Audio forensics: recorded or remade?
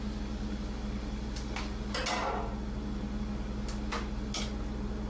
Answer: recorded